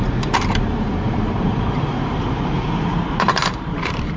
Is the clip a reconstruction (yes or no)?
yes